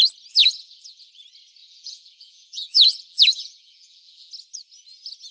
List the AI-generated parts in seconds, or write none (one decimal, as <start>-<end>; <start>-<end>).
0.4-1.1; 1.6-4.3